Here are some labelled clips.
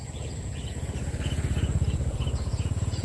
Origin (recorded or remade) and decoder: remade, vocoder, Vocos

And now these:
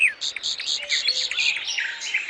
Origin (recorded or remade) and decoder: recorded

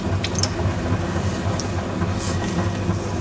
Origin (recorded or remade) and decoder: recorded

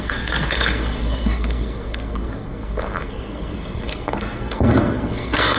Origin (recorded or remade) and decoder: remade, codec, SNAC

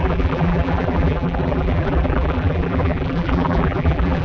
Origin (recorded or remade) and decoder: remade, vocoder, BigVGAN v2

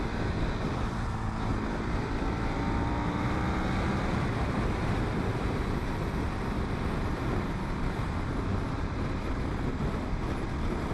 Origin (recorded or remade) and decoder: remade, vocoder, BigVGAN v2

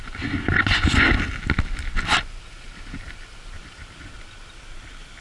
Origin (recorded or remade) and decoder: recorded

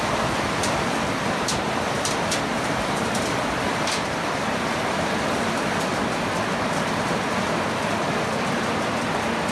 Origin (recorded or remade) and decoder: remade, vocoder, BigVGAN v2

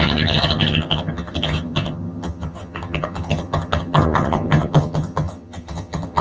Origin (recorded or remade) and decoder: remade, vocoder, HiFi-GAN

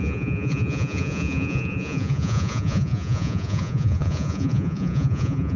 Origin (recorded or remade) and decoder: remade, vocoder, Vocos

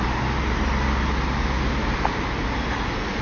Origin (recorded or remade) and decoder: recorded